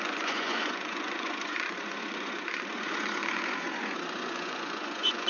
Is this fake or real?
fake